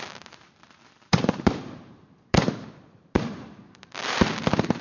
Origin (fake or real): fake